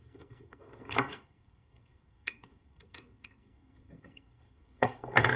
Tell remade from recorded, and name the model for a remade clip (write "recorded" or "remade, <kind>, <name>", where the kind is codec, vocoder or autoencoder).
remade, codec, SNAC